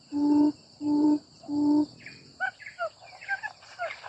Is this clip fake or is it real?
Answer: fake